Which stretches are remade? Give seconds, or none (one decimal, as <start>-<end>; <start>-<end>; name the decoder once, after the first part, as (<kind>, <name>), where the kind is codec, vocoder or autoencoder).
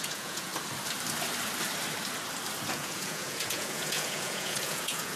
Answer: 0.0-0.5 (vocoder, Vocos); 2.7-5.2